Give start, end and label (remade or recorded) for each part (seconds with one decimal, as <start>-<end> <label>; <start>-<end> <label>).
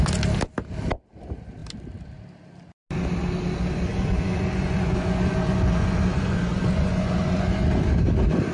0.0-3.9 recorded; 3.9-7.8 remade; 7.8-8.5 recorded